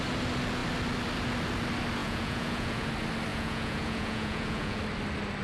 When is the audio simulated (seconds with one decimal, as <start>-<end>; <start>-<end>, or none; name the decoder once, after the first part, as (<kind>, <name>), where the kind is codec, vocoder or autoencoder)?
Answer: 2.0-2.9 (vocoder, Vocos); 3.3-4.8